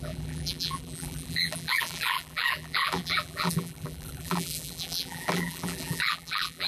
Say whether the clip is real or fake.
fake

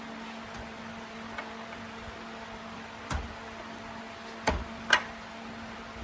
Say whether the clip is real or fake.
real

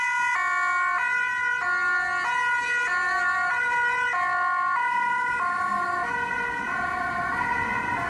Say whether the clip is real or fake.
real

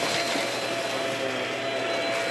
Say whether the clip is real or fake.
real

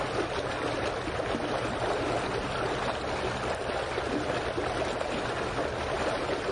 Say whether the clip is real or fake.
real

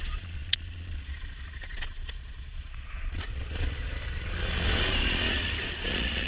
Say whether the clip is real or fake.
fake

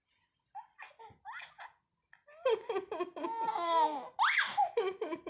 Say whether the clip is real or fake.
real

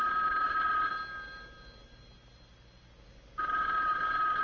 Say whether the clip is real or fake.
real